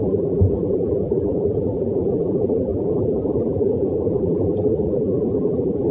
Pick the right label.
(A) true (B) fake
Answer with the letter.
B